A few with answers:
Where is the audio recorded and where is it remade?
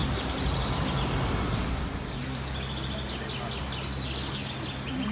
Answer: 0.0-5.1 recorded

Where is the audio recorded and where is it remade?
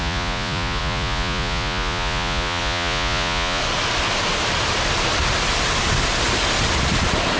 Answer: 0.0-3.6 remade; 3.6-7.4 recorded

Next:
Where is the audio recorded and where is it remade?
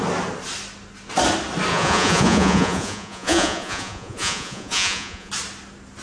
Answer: 0.0-1.7 recorded; 1.7-5.3 remade; 5.3-6.0 recorded